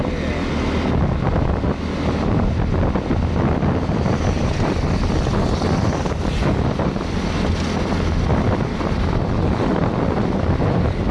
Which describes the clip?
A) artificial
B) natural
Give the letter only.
B